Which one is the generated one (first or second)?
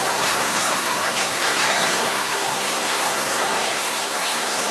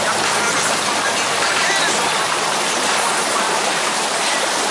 first